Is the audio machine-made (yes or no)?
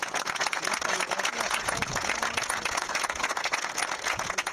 yes